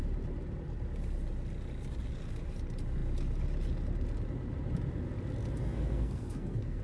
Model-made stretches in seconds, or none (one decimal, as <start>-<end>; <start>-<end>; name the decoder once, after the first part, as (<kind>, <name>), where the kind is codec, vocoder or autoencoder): 5.6-6.8 (codec, SNAC)